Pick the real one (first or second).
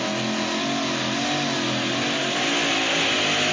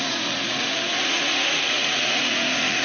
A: first